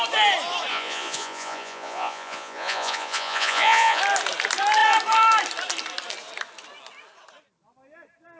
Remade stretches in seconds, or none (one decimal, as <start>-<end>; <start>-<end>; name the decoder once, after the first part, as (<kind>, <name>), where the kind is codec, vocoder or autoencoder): 0.7-4.0 (vocoder, Vocos)